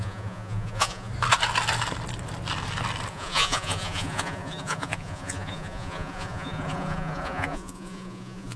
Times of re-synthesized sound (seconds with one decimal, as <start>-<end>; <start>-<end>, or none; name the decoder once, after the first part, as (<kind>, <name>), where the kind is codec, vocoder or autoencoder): 0.0-1.1 (vocoder, Vocos); 3.1-8.6